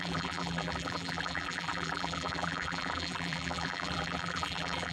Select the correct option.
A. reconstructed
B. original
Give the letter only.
A